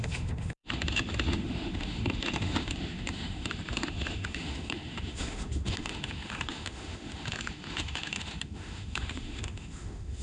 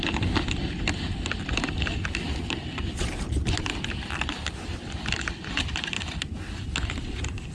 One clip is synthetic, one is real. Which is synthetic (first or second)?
first